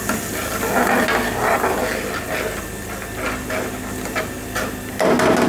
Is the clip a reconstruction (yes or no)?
no